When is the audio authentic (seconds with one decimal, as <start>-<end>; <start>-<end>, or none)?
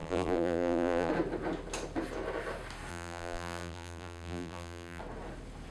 1.1-2.9; 5.0-5.7